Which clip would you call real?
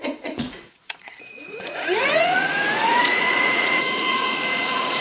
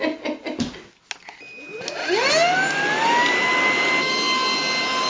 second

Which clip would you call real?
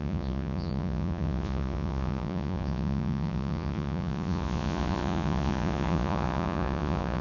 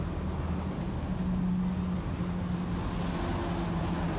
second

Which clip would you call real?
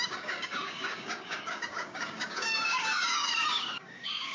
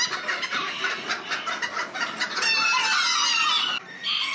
second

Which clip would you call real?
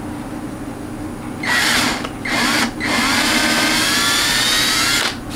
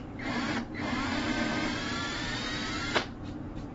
first